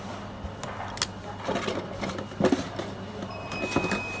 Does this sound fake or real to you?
real